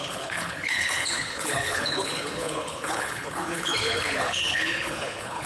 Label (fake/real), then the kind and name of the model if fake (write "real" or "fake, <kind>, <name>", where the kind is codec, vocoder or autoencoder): fake, codec, HILCodec